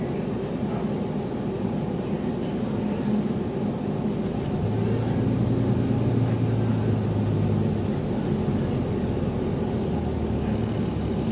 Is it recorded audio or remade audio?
recorded